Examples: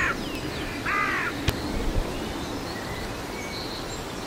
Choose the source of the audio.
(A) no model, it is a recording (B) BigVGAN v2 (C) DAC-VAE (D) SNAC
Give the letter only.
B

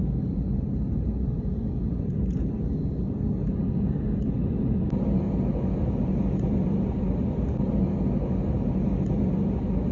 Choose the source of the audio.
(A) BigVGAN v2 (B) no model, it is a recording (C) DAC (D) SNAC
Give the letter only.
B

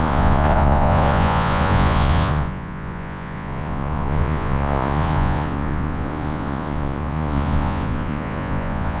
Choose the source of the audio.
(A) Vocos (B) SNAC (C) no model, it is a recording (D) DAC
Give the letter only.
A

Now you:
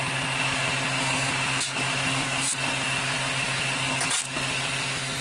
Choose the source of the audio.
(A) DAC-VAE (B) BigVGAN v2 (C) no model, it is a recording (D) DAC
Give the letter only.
C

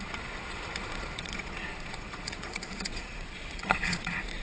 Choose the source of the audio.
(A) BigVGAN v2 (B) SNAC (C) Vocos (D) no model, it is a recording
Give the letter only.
C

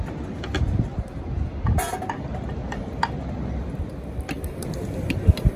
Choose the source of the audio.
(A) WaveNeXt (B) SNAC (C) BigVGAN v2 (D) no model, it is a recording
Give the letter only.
D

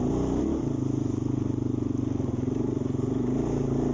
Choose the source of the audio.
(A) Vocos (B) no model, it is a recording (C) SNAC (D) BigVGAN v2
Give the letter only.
B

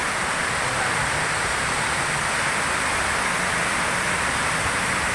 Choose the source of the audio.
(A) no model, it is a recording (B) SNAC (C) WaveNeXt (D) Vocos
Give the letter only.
A